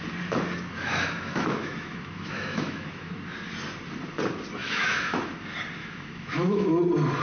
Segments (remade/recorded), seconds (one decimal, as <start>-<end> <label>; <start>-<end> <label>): 0.0-0.8 recorded; 0.8-3.1 remade; 3.1-4.6 recorded; 4.6-5.2 remade; 5.2-5.8 recorded; 5.8-6.7 remade; 6.7-7.2 recorded